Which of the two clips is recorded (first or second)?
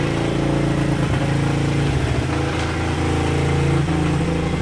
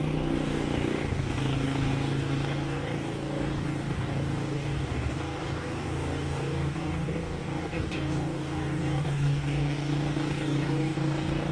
first